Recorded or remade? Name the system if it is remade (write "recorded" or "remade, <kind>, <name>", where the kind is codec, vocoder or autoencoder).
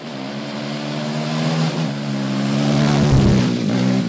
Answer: recorded